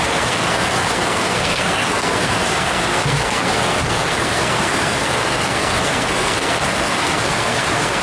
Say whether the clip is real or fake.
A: fake